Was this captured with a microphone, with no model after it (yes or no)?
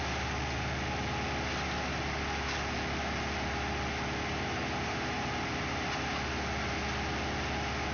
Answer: yes